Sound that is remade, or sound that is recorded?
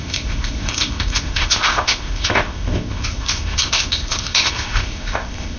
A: remade